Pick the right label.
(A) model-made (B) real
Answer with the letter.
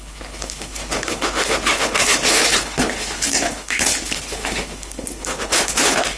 A